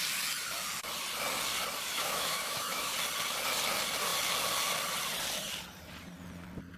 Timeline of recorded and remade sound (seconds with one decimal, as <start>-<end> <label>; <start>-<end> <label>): 0.0-1.9 recorded; 1.9-2.9 remade; 2.9-6.8 recorded